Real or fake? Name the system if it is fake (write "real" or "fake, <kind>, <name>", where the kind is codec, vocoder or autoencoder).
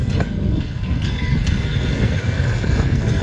fake, codec, SNAC